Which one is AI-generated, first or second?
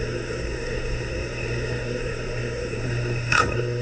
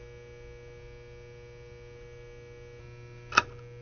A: first